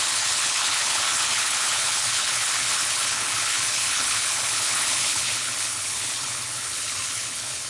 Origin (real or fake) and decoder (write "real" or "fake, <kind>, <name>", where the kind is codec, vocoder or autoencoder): fake, codec, HILCodec